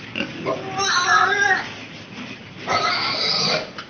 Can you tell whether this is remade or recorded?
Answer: recorded